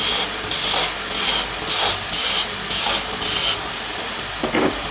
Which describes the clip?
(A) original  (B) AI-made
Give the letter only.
A